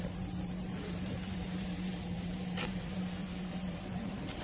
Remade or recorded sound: remade